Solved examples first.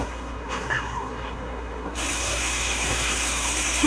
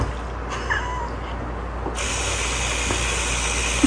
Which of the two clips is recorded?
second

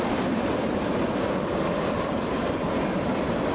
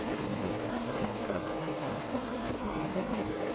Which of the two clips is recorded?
first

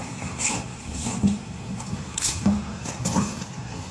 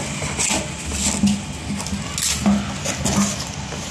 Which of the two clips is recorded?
second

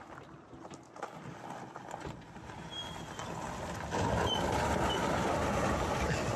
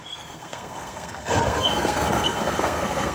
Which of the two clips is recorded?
first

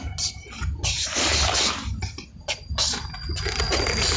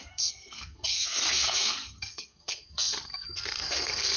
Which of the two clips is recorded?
first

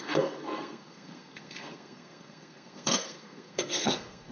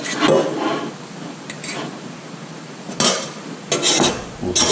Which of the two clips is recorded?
second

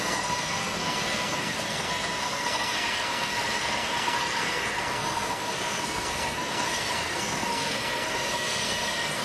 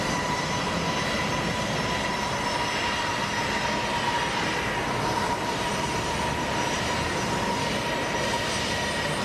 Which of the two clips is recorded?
second